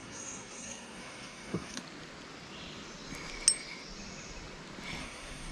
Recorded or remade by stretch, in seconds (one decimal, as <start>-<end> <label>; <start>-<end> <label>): 0.0-1.8 remade; 1.8-5.0 recorded; 5.0-5.5 remade